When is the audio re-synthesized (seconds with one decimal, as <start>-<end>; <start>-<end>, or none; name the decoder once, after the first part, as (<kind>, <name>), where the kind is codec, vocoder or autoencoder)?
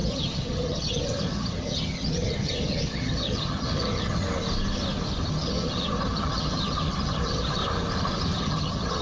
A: 0.0-4.2 (vocoder, HiFi-GAN); 5.3-7.6; 8.4-9.0